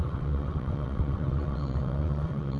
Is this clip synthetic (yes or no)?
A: yes